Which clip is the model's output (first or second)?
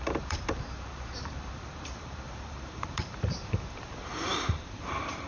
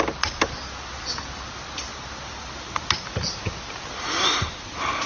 first